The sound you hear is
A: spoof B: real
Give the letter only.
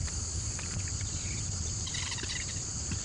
A